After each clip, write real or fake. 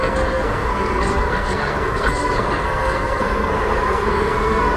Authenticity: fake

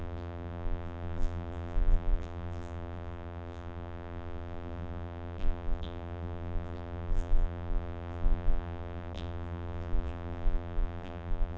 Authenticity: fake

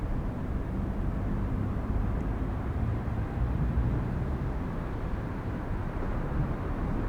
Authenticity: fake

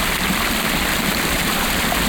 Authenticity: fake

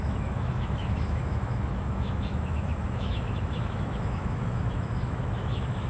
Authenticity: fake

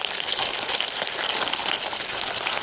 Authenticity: real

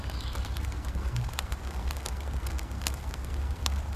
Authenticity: fake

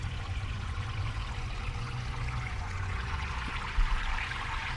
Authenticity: fake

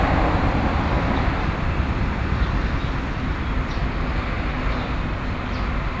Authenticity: real